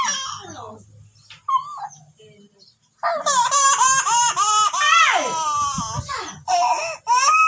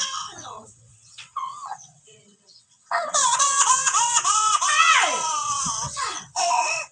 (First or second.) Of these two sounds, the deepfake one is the second